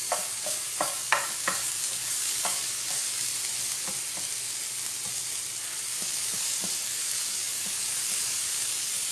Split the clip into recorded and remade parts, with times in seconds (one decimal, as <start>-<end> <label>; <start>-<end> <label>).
0.0-3.3 remade; 3.3-5.6 recorded; 5.6-9.1 remade